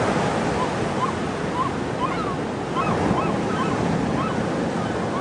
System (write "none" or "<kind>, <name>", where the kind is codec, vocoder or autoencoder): none